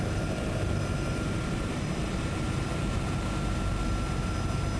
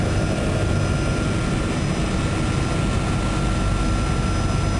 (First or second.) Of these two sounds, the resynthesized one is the first